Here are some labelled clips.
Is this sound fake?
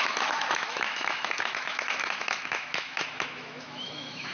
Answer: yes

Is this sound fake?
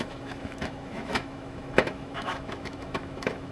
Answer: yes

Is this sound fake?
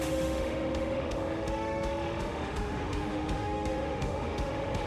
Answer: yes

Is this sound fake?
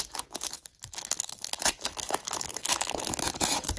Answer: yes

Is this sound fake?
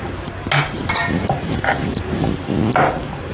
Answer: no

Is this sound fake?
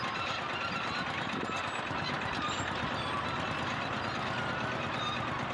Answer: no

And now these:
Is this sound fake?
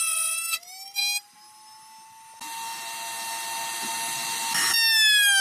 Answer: no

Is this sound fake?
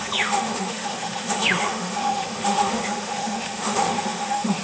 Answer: yes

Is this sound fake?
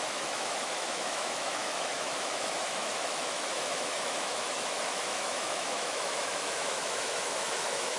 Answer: yes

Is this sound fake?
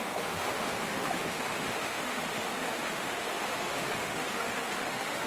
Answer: yes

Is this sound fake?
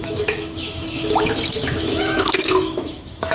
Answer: yes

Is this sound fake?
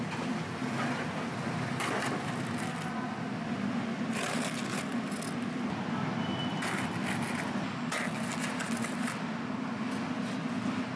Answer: no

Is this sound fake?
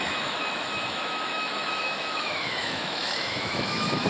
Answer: yes